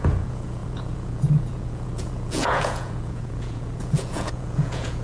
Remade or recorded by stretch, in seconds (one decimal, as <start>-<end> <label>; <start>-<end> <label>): 0.0-5.0 remade